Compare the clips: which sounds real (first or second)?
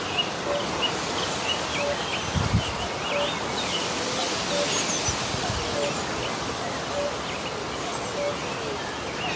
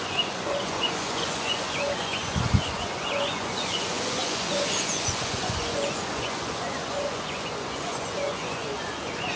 first